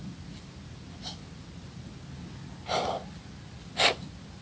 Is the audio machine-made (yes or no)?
no